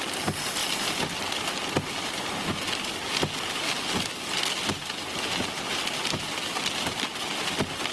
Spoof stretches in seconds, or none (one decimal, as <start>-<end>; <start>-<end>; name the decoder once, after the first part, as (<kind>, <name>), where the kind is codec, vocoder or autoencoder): none

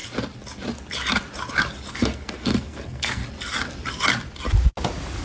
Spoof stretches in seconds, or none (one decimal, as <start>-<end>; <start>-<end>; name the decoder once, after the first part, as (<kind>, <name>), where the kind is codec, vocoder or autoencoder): 1.9-3.2 (codec, SNAC)

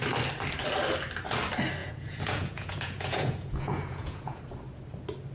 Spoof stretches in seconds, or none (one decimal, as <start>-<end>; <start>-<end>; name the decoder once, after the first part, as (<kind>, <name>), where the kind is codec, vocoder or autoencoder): 1.8-4.4 (vocoder, Vocos)

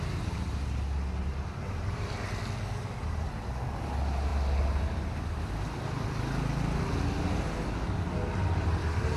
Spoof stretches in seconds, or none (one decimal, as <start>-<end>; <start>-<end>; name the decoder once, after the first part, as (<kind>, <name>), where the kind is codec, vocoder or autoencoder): none

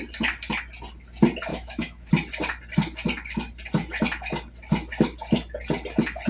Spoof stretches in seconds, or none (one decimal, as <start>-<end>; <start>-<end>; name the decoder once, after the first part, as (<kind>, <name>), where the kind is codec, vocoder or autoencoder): 1.5-2.1 (autoencoder, DAC-VAE)

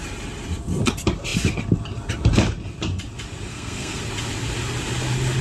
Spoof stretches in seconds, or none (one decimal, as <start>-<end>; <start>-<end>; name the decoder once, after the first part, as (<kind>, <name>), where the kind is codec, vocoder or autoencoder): 3.5-4.0 (codec, SNAC)